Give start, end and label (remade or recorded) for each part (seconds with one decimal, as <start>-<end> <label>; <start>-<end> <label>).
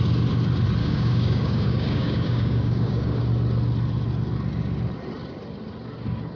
0.0-0.8 recorded; 0.8-3.2 remade; 3.2-6.3 recorded